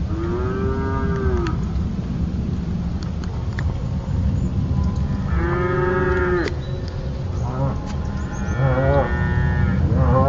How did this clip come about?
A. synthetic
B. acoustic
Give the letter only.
B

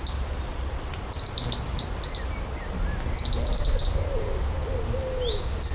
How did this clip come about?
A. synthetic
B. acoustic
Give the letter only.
B